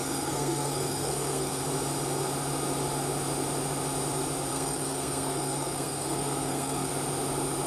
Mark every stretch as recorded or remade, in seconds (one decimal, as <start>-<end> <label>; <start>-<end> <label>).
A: 0.0-1.6 remade; 1.6-4.5 recorded; 4.5-6.9 remade; 6.9-7.7 recorded